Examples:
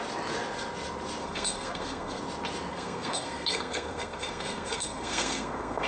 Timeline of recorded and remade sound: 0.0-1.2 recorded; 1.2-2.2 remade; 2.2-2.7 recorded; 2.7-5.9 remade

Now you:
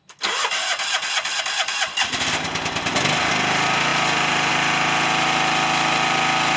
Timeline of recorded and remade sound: 0.0-0.6 recorded; 0.6-1.4 remade; 1.4-6.6 recorded